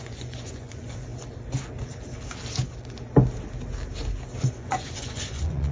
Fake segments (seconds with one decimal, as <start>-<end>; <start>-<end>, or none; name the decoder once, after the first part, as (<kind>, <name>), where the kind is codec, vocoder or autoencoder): 0.0-1.1 (vocoder, Vocos); 4.5-5.7